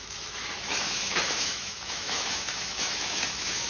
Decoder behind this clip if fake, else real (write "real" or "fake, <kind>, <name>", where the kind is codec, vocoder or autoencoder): fake, autoencoder, DAC-VAE